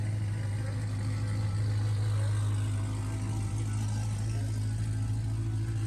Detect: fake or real real